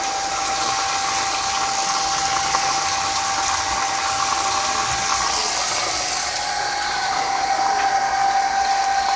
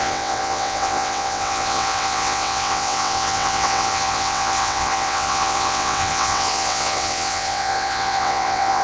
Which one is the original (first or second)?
first